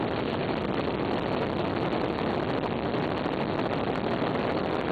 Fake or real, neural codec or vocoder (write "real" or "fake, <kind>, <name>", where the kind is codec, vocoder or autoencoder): real